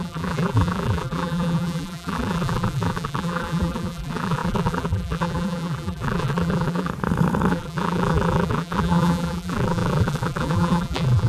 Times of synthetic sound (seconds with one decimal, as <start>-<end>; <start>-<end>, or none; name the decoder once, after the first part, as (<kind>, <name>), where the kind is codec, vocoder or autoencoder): 0.0-6.9 (vocoder, BigVGAN v2); 7.5-11.3